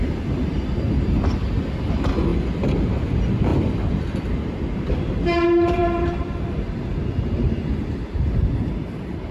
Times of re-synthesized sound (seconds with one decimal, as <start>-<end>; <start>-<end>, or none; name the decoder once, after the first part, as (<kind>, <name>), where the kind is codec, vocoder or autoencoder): none